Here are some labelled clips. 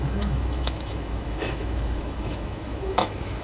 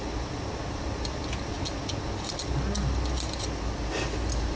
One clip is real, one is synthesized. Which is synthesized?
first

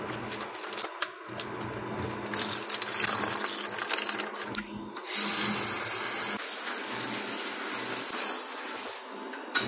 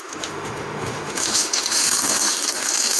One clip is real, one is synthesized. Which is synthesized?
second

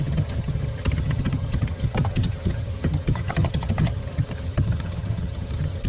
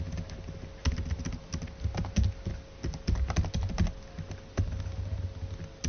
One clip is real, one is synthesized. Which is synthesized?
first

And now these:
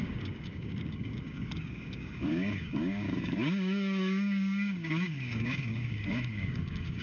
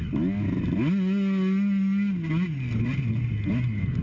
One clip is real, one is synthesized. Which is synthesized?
first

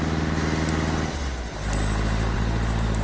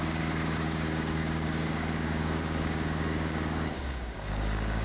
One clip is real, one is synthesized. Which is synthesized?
second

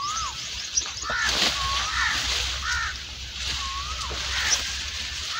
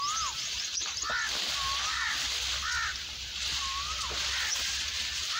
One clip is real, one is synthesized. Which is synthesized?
first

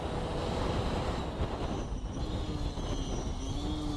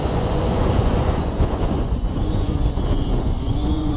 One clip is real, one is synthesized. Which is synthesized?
second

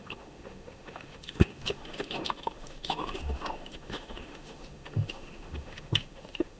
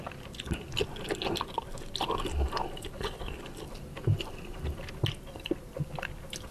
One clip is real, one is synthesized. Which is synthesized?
first